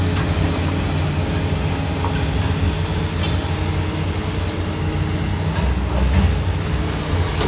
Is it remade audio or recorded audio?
recorded